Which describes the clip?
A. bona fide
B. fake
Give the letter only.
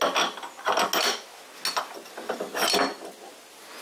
A